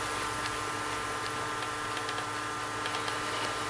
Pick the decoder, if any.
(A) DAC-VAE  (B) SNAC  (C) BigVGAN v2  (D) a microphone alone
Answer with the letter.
D